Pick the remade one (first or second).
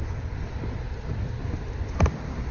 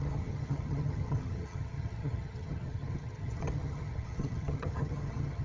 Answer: second